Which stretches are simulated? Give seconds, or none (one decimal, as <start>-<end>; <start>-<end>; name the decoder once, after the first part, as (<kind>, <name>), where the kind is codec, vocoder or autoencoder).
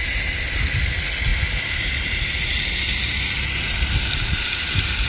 none